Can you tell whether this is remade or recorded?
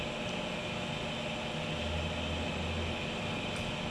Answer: recorded